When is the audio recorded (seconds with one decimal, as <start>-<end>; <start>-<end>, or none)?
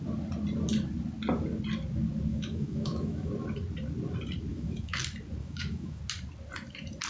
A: 0.0-2.3; 3.3-4.5; 5.0-5.4; 6.0-7.1